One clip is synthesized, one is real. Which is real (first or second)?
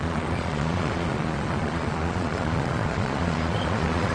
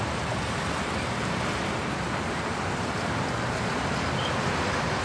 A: second